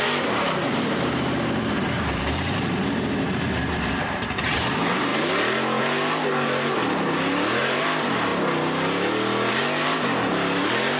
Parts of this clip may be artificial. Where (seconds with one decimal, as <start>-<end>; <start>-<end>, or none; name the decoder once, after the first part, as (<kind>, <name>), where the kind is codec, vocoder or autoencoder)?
0.0-5.1 (vocoder, BigVGAN v2); 5.8-8.3; 9.5-11.0